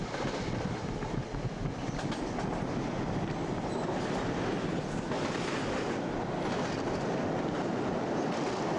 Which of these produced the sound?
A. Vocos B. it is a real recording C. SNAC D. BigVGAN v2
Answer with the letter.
B